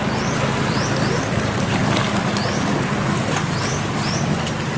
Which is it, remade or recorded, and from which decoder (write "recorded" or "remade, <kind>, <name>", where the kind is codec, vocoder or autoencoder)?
recorded